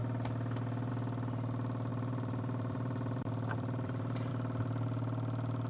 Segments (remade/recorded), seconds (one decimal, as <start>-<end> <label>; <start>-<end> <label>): 0.0-1.9 recorded; 1.9-4.3 remade; 4.3-5.7 recorded